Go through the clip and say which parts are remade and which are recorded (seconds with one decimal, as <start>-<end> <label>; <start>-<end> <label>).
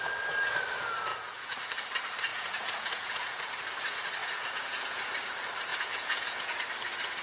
0.0-1.1 recorded; 1.1-1.7 remade; 1.7-2.3 recorded; 2.3-3.5 remade; 3.5-4.2 recorded; 4.2-5.0 remade; 5.0-5.7 recorded; 5.7-6.6 remade; 6.6-7.2 recorded